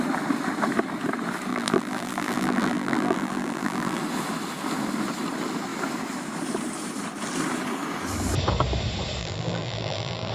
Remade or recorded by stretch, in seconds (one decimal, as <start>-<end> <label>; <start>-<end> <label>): 0.0-1.5 recorded; 1.5-4.0 remade; 4.0-9.2 recorded; 9.2-10.3 remade